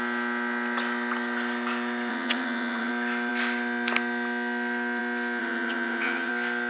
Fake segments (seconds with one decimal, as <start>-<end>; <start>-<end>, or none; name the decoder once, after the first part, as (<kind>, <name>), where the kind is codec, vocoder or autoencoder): 2.1-2.9 (vocoder, HiFi-GAN); 5.4-6.3

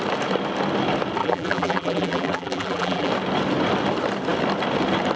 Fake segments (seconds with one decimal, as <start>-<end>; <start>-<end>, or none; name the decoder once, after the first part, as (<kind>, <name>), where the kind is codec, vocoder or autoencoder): 1.2-3.1 (vocoder, BigVGAN v2)

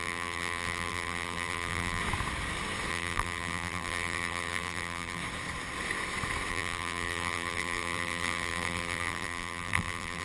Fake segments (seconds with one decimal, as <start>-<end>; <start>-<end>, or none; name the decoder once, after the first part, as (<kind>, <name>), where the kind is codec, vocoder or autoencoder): 0.0-2.0 (vocoder, BigVGAN v2); 2.9-5.2; 6.5-10.2

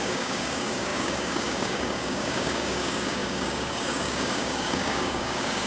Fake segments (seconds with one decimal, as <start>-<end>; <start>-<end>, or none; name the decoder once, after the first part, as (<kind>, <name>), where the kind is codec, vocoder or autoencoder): 0.0-5.7 (codec, DAC)

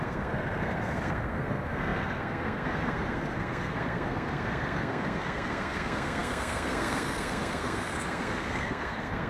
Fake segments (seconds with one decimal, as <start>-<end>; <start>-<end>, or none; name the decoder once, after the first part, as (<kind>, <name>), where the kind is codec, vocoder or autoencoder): 0.0-9.3 (codec, SNAC)

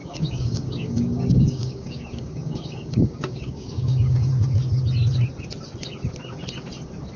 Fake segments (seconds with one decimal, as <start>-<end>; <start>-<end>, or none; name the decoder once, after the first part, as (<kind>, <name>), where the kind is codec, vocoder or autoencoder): 0.0-4.3 (codec, DAC)

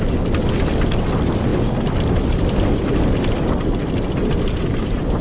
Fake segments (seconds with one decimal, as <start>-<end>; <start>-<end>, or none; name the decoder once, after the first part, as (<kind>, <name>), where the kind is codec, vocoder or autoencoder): none

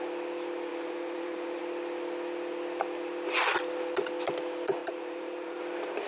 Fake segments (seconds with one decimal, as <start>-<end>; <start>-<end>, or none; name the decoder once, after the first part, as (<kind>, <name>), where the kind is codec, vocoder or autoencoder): 0.7-1.6 (vocoder, BigVGAN v2); 4.8-5.6